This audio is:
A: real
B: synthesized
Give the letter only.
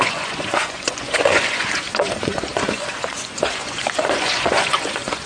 B